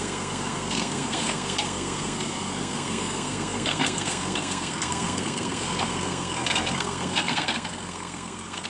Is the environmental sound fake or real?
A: fake